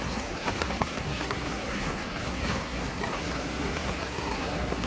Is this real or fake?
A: fake